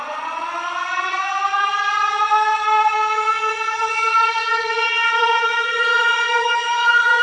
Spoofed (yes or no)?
yes